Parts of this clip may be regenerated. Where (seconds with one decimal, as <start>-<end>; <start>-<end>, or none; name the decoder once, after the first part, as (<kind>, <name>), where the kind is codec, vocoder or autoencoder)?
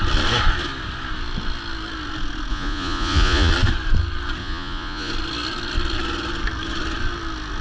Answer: 2.5-3.5 (vocoder, Vocos); 4.4-5.1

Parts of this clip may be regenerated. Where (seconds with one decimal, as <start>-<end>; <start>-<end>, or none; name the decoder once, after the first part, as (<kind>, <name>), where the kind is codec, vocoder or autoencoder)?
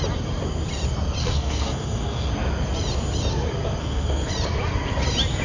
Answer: 1.2-2.3 (codec, SNAC); 3.8-4.3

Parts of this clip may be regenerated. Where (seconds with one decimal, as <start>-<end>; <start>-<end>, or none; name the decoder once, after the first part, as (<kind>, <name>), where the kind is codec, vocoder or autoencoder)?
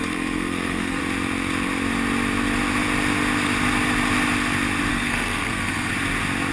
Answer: 0.0-1.0 (codec, SNAC); 4.9-5.9